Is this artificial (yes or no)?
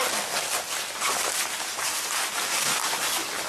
no